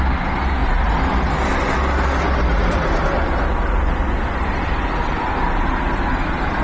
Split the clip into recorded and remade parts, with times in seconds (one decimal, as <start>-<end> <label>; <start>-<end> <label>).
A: 0.0-6.6 recorded